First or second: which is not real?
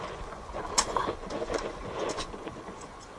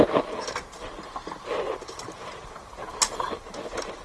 first